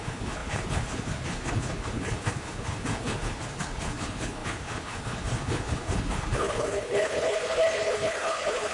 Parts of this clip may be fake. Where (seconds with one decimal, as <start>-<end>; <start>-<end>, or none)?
0.0-8.7